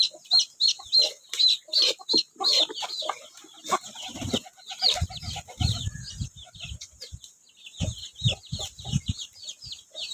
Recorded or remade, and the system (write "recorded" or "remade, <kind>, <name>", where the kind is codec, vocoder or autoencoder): recorded